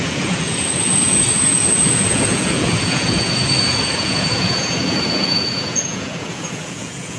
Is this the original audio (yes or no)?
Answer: no